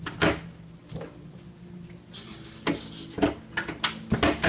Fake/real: real